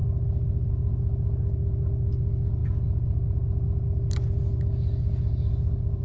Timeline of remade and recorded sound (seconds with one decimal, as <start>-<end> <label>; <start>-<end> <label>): 0.0-6.0 recorded